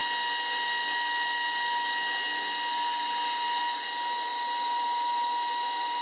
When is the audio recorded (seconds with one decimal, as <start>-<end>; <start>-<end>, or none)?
0.0-4.3